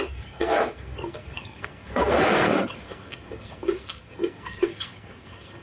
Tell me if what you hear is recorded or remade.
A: remade